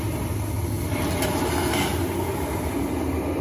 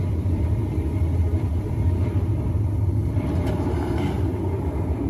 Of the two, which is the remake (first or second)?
second